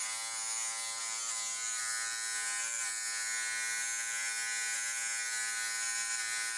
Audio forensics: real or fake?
real